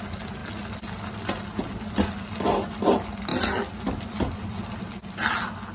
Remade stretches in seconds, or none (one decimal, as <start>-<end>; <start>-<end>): none